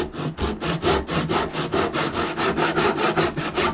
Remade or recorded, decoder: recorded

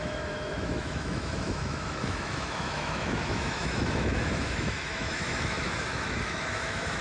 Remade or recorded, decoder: remade, autoencoder, DAC-VAE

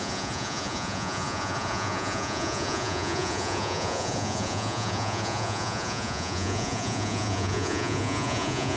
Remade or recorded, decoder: remade, vocoder, Vocos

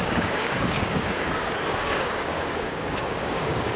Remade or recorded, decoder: remade, codec, DAC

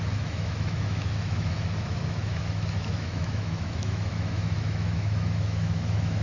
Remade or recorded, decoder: remade, autoencoder, DAC-VAE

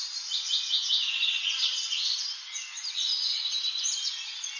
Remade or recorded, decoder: recorded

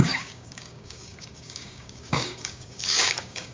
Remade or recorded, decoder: remade, codec, DAC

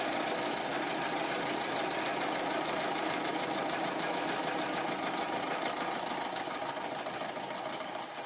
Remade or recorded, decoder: recorded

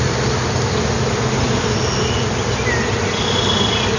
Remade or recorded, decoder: recorded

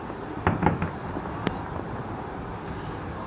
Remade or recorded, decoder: recorded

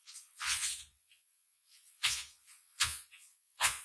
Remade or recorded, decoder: remade, vocoder, Vocos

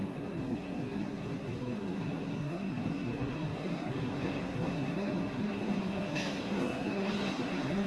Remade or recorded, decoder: remade, codec, SNAC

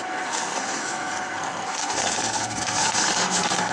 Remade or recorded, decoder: remade, codec, SNAC